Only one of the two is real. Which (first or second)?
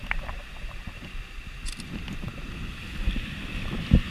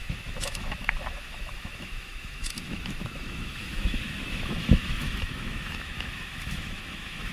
first